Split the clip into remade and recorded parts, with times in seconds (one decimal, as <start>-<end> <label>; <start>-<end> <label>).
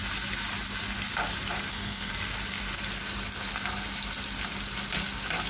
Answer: 0.0-1.7 recorded; 1.7-2.1 remade; 2.1-5.5 recorded